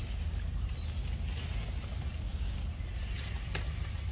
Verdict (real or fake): real